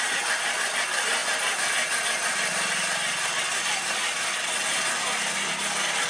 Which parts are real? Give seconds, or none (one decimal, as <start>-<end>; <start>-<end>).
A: 1.2-2.5